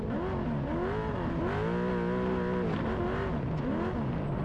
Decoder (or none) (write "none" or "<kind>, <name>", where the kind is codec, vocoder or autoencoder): none